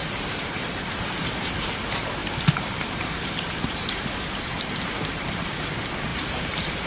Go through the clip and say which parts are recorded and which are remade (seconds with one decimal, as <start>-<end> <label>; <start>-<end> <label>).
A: 0.0-1.7 remade; 1.7-2.2 recorded; 2.2-5.6 remade; 5.6-6.1 recorded; 6.1-6.9 remade